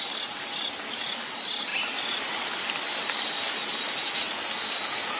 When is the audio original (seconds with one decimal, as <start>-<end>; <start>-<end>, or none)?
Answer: 0.0-5.2